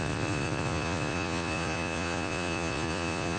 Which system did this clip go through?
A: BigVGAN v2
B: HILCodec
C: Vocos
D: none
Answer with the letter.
C